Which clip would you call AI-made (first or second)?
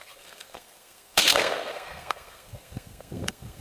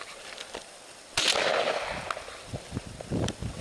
first